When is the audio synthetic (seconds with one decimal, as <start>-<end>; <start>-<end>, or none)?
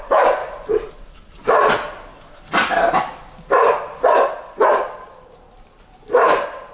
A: none